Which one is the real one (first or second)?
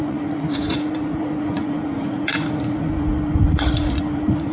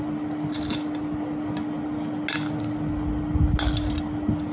second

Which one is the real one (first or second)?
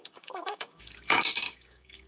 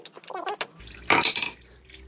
second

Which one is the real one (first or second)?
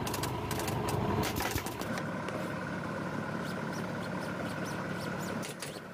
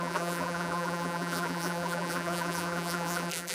first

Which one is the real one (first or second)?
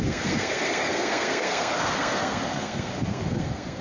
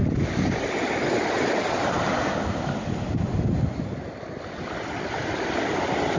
second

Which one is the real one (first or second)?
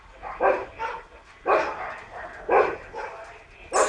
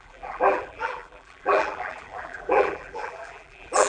first